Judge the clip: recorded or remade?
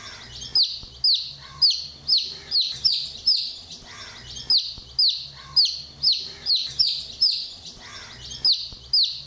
recorded